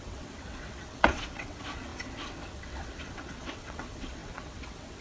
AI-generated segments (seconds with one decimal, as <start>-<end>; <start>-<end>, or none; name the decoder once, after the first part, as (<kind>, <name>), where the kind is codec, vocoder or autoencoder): 0.0-5.0 (vocoder, WaveNeXt)

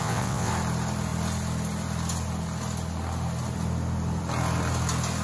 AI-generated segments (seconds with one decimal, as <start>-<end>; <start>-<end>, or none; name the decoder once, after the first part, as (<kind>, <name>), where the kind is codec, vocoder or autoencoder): 0.0-0.5 (vocoder, WaveNeXt)

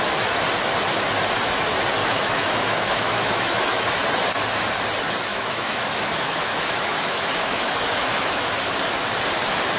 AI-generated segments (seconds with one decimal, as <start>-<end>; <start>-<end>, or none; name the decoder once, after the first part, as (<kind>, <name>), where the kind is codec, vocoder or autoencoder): 2.0-3.9 (autoencoder, DAC-VAE); 5.3-8.5